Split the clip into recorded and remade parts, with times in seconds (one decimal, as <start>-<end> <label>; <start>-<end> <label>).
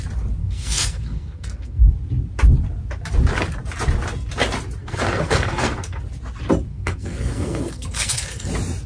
0.0-0.4 recorded; 0.4-1.9 remade; 1.9-4.8 recorded; 4.8-6.0 remade; 6.0-6.7 recorded; 6.7-8.5 remade; 8.5-8.9 recorded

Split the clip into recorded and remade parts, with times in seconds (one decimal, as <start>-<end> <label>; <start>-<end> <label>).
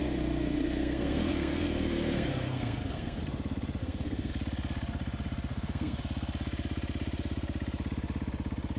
0.0-3.2 remade; 3.2-3.8 recorded; 3.8-4.3 remade; 4.3-5.5 recorded; 5.5-6.0 remade; 6.0-8.8 recorded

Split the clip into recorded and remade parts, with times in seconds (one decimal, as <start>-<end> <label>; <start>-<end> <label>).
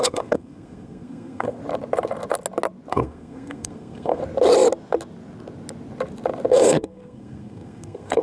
0.0-1.6 remade; 1.6-2.9 recorded; 2.9-4.2 remade; 4.2-6.5 recorded; 6.5-8.2 remade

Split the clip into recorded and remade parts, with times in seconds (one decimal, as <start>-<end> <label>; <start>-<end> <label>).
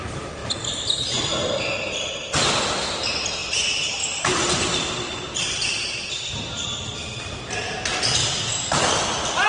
0.0-9.5 recorded